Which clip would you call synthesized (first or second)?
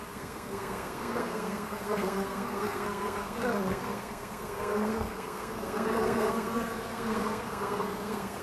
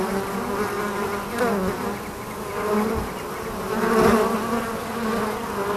first